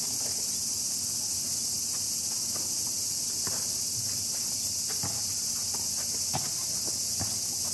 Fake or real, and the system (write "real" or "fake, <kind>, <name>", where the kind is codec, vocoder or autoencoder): real